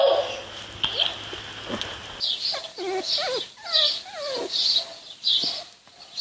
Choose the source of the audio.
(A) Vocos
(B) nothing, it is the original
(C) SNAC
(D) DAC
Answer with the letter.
B